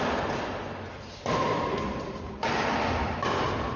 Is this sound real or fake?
real